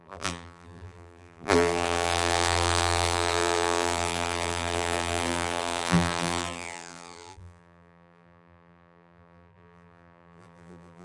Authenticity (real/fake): fake